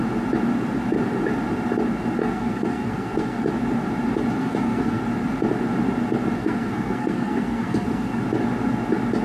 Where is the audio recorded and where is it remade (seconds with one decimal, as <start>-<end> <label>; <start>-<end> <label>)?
0.0-2.2 recorded; 2.2-3.5 remade; 3.5-4.4 recorded; 4.4-5.0 remade; 5.0-6.4 recorded; 6.4-8.2 remade; 8.2-9.2 recorded